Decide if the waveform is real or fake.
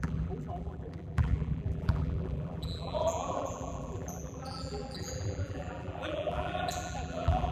fake